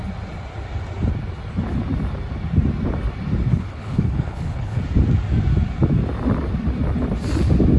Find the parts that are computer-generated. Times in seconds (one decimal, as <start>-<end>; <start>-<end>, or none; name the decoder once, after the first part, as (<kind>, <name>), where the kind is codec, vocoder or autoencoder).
3.5-4.8 (codec, HILCodec)